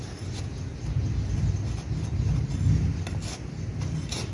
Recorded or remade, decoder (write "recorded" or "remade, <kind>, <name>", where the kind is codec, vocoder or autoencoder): recorded